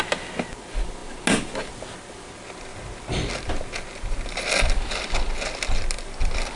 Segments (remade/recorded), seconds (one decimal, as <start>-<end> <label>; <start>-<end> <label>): 0.0-6.6 recorded